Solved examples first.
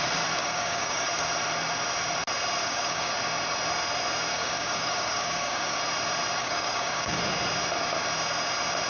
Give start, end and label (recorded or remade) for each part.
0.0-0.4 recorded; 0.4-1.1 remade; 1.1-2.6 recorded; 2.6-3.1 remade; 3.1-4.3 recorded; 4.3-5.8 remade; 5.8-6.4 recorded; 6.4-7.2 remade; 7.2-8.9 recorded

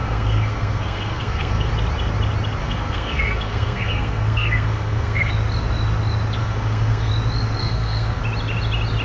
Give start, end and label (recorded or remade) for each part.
0.0-1.7 remade; 1.7-2.6 recorded; 2.6-5.3 remade; 5.3-6.4 recorded; 6.4-7.1 remade; 7.1-7.6 recorded; 7.6-8.2 remade; 8.2-9.0 recorded